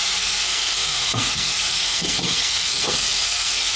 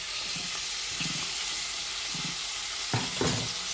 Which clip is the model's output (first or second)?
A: first